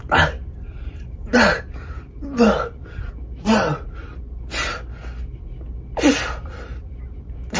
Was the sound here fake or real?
real